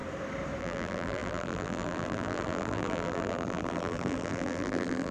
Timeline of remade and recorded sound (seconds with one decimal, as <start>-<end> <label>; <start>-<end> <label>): 0.0-0.6 recorded; 0.6-5.1 remade